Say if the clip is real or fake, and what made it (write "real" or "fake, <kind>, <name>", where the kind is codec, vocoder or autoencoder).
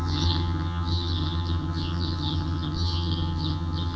fake, vocoder, HiFi-GAN